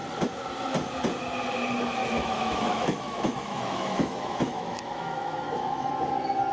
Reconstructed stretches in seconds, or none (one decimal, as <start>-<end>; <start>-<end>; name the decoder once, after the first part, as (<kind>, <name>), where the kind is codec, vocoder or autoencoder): 2.0-5.9 (autoencoder, DAC-VAE)